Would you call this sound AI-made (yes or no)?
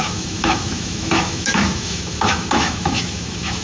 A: yes